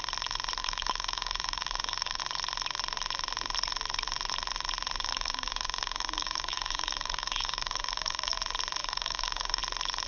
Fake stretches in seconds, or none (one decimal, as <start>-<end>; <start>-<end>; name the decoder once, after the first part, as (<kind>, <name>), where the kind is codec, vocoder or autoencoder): 0.6-2.2 (codec, DAC); 5.1-8.3; 8.8-9.6